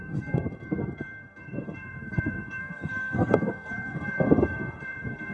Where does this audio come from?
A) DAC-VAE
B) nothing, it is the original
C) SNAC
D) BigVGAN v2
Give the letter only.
C